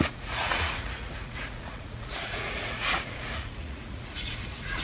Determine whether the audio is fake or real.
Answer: fake